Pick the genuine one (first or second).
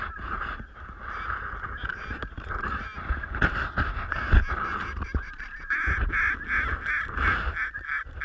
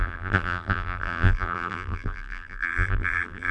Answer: first